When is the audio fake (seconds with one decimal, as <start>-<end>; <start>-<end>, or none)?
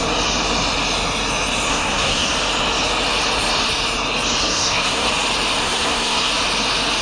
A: 1.7-2.3; 4.4-5.1; 5.6-6.3